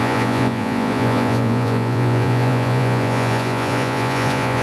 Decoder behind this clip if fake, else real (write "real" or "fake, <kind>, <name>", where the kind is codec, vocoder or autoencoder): fake, vocoder, Vocos